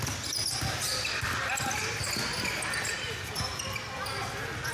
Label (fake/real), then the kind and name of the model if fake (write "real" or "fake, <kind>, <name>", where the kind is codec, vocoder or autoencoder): real